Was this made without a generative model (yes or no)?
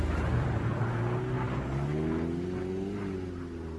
yes